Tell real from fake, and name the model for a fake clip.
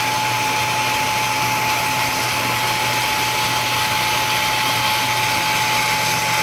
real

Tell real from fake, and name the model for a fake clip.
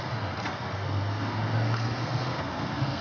fake, codec, SNAC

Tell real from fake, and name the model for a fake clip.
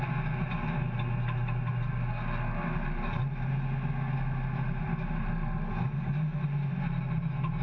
real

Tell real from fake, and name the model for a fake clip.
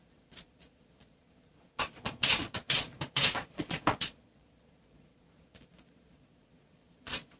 fake, vocoder, Vocos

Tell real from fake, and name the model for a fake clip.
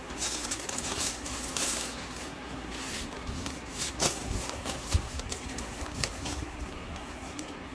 fake, codec, SNAC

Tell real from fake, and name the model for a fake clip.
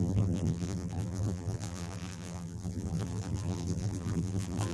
fake, vocoder, BigVGAN v2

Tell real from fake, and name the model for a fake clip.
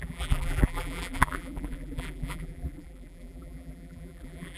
fake, vocoder, BigVGAN v2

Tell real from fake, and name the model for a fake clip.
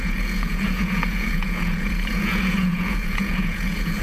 fake, vocoder, Vocos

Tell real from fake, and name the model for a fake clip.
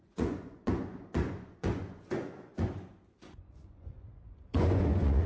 fake, vocoder, Vocos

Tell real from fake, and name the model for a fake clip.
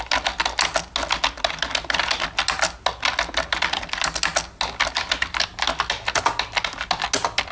real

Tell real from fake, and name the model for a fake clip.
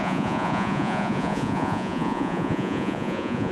fake, vocoder, Vocos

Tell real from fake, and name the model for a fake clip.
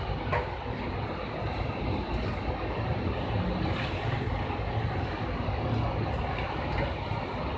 real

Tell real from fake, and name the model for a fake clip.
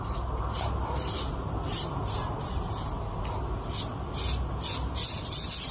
real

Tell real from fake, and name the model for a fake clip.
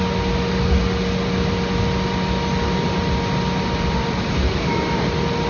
real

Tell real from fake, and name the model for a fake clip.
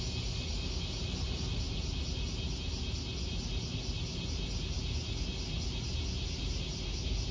real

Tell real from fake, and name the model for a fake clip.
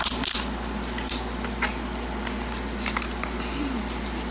real